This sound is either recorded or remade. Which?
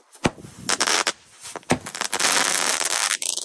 recorded